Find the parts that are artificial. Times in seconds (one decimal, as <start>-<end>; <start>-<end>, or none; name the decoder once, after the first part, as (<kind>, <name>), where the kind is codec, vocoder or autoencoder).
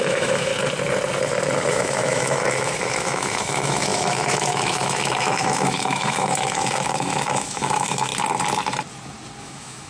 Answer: 0.0-0.5 (autoencoder, DAC-VAE); 1.7-8.1; 9.4-9.9